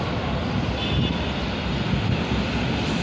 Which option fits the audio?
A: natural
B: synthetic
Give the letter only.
A